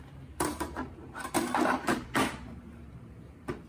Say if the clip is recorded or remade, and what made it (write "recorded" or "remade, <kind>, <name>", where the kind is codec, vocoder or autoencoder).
remade, vocoder, BigVGAN v2